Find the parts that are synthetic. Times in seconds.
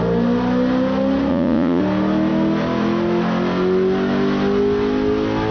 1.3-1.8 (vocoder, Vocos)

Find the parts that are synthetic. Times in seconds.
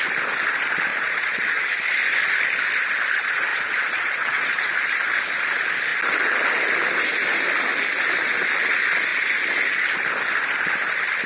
0.9-1.6 (vocoder, Vocos); 3.5-4.7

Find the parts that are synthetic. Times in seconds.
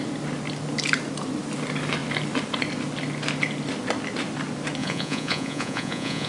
4.8-6.3 (vocoder, Vocos)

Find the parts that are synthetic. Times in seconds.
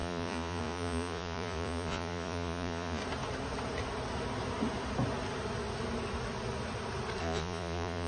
0.0-3.0 (vocoder, Vocos); 7.2-8.1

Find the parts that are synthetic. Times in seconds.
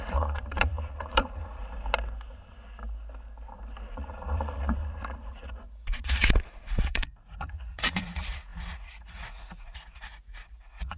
0.0-1.6 (vocoder, Vocos); 3.9-11.0